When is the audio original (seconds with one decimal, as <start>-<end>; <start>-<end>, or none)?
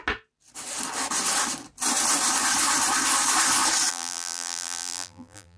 0.0-3.9